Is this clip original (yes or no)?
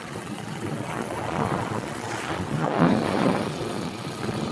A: no